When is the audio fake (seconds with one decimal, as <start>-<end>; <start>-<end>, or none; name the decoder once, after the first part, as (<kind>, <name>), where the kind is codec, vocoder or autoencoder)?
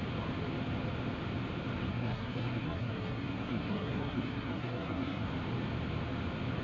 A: 1.9-5.3 (codec, SNAC)